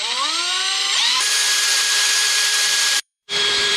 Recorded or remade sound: remade